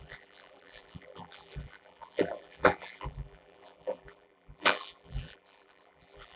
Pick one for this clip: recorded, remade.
remade